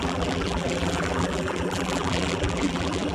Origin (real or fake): fake